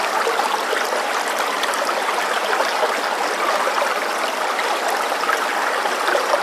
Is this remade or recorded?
recorded